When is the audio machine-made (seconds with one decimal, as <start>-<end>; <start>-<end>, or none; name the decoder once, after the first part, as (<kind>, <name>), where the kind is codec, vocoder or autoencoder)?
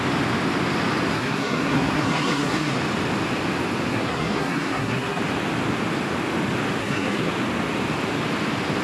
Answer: 1.1-2.8 (codec, SNAC); 3.9-5.2; 6.8-7.3